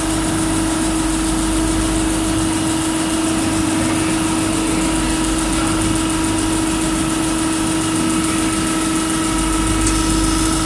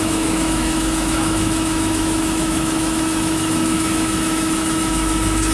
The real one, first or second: first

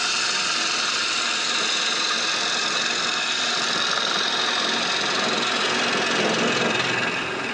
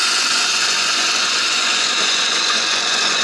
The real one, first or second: first